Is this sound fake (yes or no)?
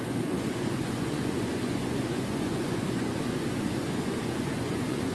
yes